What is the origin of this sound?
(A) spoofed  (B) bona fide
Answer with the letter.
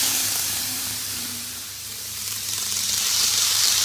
A